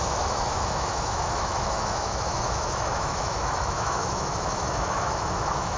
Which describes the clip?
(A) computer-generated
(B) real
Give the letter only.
A